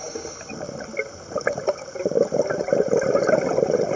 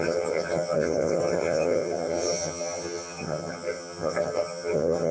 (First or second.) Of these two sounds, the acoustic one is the first